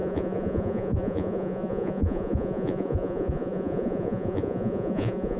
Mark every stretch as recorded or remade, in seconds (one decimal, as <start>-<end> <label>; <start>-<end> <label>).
0.0-5.4 remade